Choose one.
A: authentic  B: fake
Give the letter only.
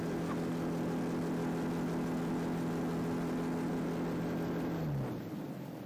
A